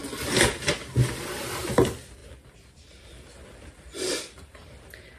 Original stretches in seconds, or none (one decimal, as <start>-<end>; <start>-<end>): 0.0-2.2; 4.4-5.2